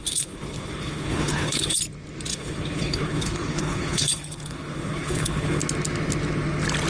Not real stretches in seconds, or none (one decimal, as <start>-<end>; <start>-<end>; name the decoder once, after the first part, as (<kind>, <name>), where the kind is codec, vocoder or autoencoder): 0.0-1.8 (codec, HILCodec); 2.3-5.6